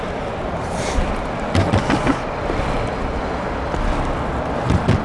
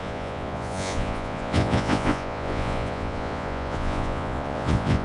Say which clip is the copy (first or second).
second